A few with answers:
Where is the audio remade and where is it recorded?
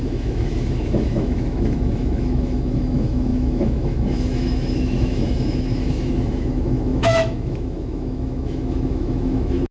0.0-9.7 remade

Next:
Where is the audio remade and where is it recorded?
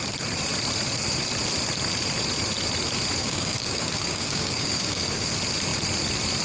0.0-3.2 recorded; 3.2-5.3 remade; 5.3-6.4 recorded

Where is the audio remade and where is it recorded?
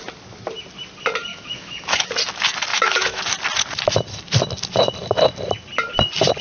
0.0-1.3 recorded; 1.3-2.1 remade; 2.1-2.7 recorded; 2.7-3.2 remade; 3.2-6.4 recorded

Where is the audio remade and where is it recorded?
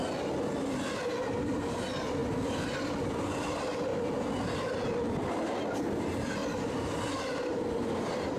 0.0-2.2 remade; 2.2-2.7 recorded; 2.7-3.9 remade; 3.9-5.8 recorded; 5.8-8.4 remade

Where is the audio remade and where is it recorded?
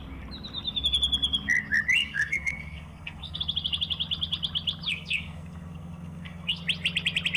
0.0-2.0 recorded; 2.0-3.4 remade; 3.4-4.9 recorded; 4.9-6.6 remade; 6.6-7.4 recorded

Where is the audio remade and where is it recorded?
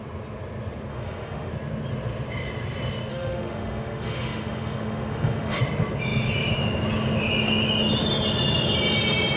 0.0-0.9 recorded; 0.9-1.5 remade; 1.5-3.1 recorded; 3.1-5.6 remade; 5.6-9.4 recorded